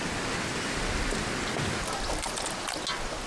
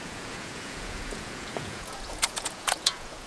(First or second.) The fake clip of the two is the second